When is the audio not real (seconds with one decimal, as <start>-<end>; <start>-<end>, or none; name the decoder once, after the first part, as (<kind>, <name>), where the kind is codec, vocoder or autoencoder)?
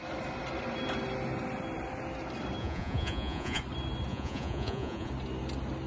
2.6-3.6 (vocoder, Vocos); 4.1-5.1